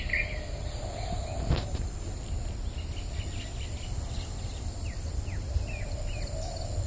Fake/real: real